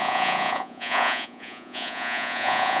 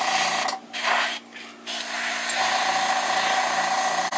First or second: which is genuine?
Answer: second